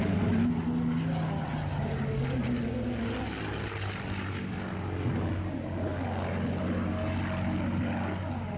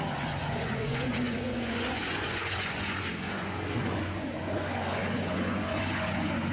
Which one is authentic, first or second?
first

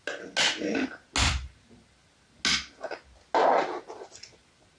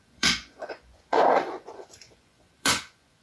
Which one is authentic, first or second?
first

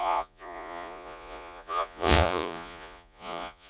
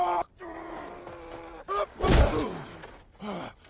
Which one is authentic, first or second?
second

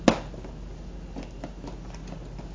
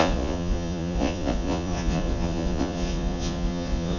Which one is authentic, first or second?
first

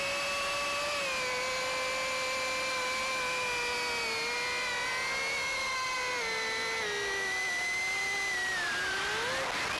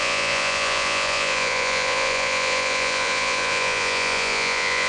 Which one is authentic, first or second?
first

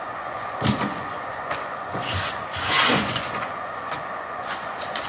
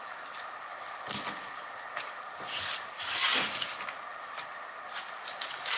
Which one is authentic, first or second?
second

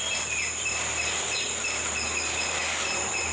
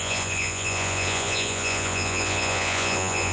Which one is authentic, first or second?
first